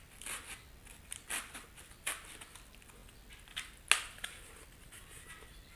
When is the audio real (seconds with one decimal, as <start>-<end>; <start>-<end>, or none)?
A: 0.0-5.8